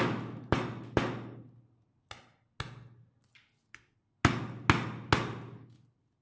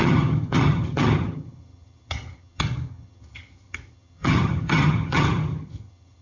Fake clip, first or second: second